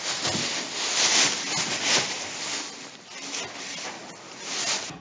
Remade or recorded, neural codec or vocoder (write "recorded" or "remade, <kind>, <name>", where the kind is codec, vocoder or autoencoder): recorded